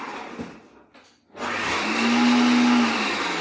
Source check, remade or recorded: recorded